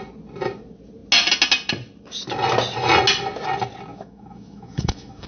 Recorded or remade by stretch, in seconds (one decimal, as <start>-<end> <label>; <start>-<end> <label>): 0.0-3.9 recorded; 3.9-5.3 remade